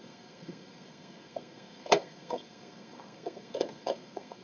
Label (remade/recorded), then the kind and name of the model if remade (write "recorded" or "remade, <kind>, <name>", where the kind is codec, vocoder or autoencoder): remade, codec, SNAC